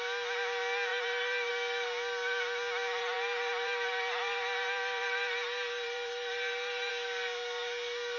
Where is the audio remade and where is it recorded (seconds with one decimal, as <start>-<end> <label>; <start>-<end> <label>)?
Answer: 0.0-0.9 recorded; 0.9-1.5 remade; 1.5-3.0 recorded; 3.0-6.9 remade; 6.9-8.2 recorded